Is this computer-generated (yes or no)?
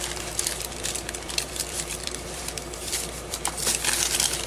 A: yes